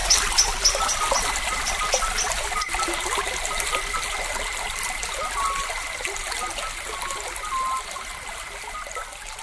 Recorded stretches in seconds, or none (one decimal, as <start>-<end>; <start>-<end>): 0.0-9.4